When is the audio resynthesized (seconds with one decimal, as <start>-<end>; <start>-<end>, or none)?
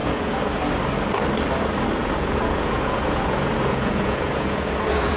0.0-0.6; 2.0-5.2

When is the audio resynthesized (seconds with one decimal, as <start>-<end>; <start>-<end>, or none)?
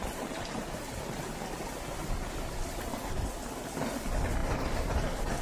0.0-0.6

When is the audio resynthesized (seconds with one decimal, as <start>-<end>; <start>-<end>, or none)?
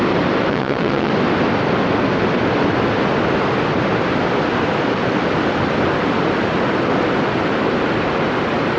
0.5-1.1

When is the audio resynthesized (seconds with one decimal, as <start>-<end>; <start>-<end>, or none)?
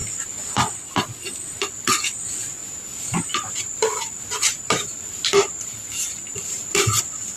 2.6-7.0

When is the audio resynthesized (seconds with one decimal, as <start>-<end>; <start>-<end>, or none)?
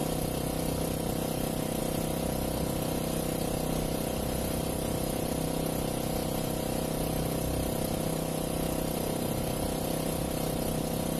none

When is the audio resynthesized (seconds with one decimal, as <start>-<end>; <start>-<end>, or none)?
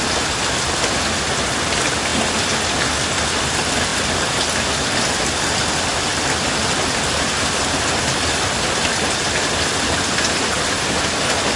none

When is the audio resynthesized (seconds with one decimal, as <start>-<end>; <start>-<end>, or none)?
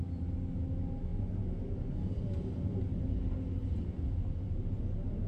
none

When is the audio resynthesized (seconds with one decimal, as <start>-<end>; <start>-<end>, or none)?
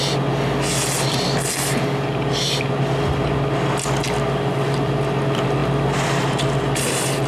5.6-7.3